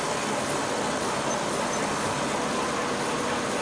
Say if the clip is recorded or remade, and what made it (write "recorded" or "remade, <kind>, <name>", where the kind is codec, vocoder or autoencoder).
recorded